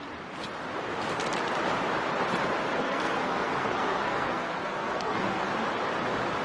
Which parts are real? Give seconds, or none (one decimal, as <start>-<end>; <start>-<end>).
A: 0.0-2.6; 5.5-6.4